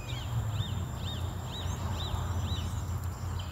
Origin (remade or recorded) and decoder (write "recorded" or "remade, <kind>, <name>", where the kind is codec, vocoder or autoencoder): recorded